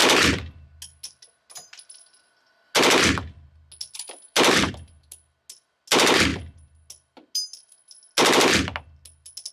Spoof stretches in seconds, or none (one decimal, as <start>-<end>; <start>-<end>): none